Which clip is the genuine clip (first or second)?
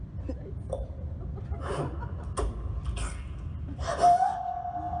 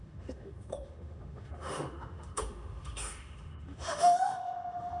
first